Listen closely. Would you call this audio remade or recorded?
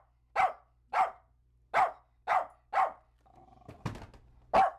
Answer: recorded